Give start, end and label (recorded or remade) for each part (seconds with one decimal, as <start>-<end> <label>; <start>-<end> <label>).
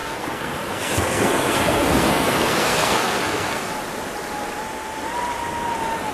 0.0-3.7 remade; 3.7-6.1 recorded